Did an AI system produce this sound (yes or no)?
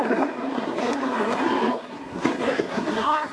yes